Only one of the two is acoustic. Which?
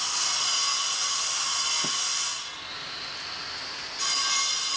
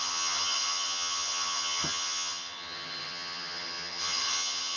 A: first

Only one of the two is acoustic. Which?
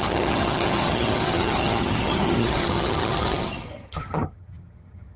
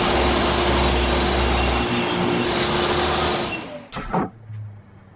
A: second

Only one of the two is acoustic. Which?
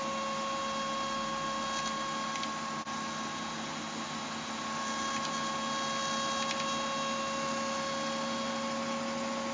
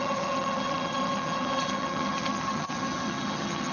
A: first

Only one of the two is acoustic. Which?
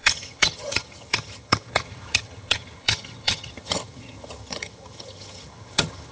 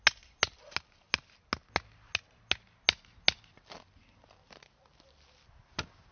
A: second